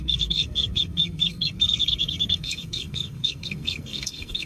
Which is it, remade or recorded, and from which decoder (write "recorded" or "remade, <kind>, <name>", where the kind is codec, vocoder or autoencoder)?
remade, codec, SNAC